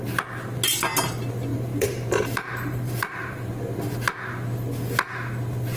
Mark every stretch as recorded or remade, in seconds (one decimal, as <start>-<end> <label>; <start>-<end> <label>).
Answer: 0.0-1.5 recorded; 1.5-3.5 remade; 3.5-5.8 recorded

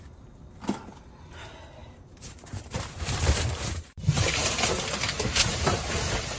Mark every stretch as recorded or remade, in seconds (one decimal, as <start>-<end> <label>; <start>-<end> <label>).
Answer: 0.0-1.8 recorded; 1.8-5.6 remade; 5.6-6.4 recorded